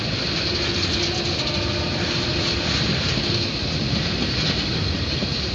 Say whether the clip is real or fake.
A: real